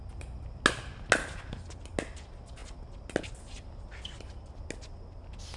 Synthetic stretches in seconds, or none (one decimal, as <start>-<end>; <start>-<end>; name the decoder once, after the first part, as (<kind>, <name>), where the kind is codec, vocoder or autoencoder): none